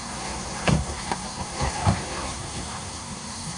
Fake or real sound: fake